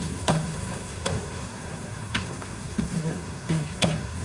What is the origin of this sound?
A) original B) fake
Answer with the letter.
B